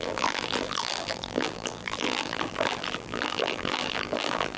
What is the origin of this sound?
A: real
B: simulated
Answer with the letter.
B